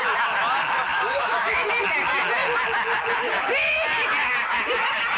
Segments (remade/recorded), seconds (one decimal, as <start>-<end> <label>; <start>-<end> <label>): 0.0-0.9 recorded; 0.9-1.7 remade; 1.7-5.2 recorded